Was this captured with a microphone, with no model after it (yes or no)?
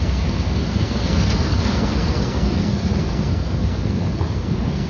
no